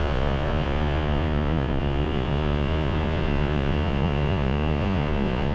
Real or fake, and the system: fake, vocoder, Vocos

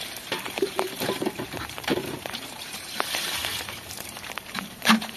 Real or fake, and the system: fake, vocoder, BigVGAN v2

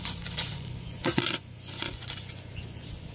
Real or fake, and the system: fake, vocoder, Vocos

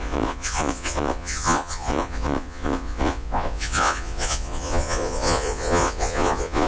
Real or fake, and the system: fake, vocoder, Vocos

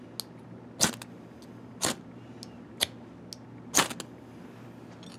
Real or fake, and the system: real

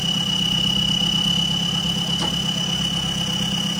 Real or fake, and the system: real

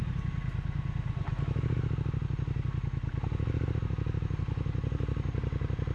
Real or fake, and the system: real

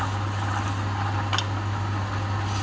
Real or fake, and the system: real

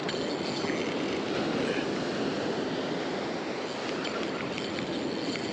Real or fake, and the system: real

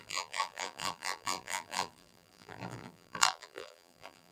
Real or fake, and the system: fake, vocoder, BigVGAN v2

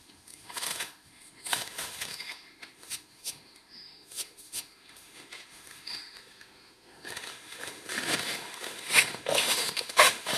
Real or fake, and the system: fake, autoencoder, DAC-VAE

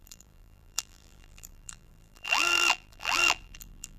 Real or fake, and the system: fake, vocoder, BigVGAN v2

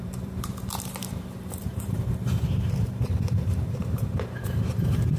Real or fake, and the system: fake, vocoder, BigVGAN v2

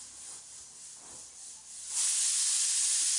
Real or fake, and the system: real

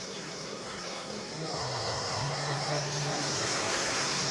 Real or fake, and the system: fake, codec, SNAC